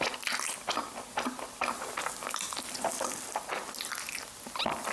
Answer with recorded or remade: recorded